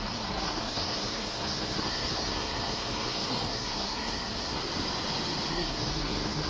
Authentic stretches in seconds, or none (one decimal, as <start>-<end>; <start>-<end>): 4.6-5.5